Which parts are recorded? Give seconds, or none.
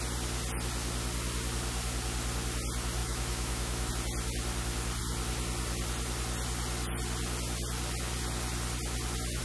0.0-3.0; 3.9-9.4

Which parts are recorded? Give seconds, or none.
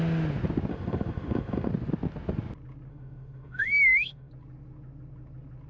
0.0-0.7; 1.7-2.9; 4.3-5.7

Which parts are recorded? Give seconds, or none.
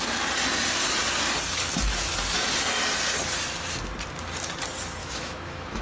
0.0-5.0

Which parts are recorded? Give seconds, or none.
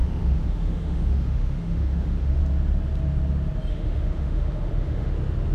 2.4-3.7; 5.1-5.5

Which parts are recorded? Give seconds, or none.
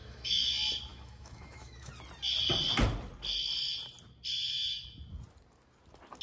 0.5-0.9; 1.9-6.2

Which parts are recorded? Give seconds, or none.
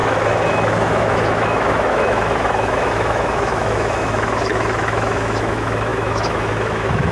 none